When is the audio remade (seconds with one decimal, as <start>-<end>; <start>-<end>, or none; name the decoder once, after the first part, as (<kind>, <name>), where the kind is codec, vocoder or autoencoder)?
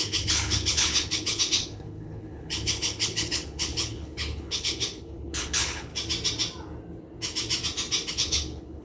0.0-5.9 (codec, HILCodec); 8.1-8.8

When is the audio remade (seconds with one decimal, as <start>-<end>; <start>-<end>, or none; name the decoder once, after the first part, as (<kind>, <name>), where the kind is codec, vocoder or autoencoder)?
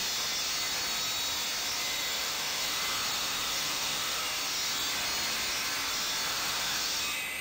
1.9-2.8 (autoencoder, DAC-VAE); 3.2-4.2; 6.3-6.9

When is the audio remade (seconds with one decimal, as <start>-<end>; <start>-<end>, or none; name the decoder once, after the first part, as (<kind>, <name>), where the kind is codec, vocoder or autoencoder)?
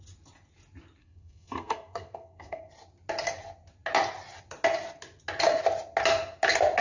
1.0-2.7 (codec, SNAC)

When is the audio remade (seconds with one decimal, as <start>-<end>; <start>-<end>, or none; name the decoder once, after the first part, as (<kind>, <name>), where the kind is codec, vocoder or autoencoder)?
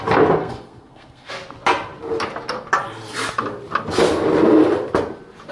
0.4-1.3 (codec, SNAC)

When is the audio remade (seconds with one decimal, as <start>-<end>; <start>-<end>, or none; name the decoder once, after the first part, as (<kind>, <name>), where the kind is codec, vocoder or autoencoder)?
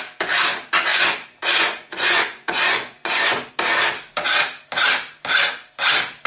0.9-3.5 (vocoder, Vocos)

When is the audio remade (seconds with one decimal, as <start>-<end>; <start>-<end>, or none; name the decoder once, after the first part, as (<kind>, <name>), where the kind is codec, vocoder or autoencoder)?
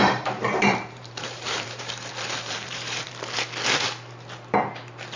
0.0-3.1 (vocoder, BigVGAN v2)